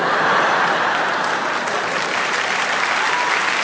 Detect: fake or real real